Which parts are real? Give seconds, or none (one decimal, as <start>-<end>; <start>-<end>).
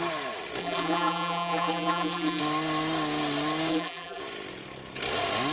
0.0-0.6; 2.4-3.7; 4.2-5.5